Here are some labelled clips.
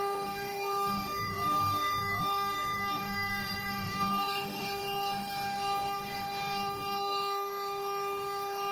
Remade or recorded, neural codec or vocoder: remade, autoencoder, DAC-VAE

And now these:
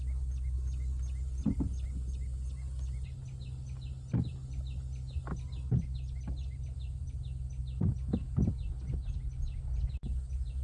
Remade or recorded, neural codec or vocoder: recorded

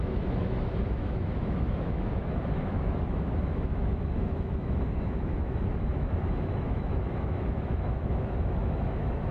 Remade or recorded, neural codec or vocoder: remade, autoencoder, DAC-VAE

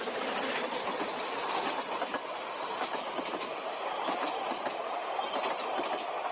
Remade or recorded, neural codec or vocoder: recorded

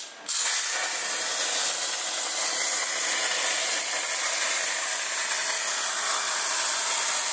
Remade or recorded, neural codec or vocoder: recorded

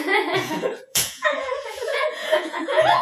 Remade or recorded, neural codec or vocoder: remade, vocoder, Vocos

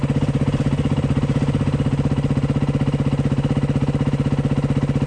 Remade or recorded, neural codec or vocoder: recorded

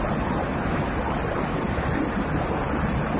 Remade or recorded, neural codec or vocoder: recorded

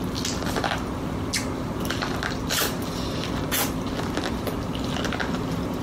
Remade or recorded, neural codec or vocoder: recorded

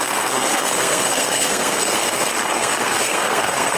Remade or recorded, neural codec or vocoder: remade, codec, SNAC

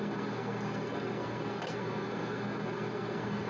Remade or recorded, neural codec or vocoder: remade, codec, SNAC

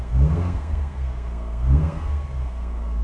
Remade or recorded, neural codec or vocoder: remade, codec, SNAC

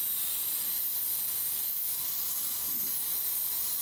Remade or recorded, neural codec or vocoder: recorded